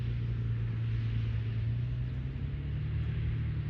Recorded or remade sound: recorded